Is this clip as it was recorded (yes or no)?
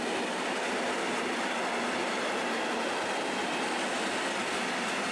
yes